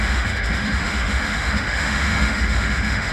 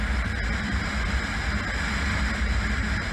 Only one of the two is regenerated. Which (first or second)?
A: first